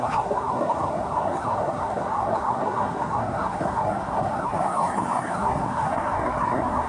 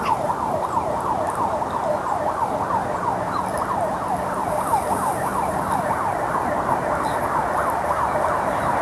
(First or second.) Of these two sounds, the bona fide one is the second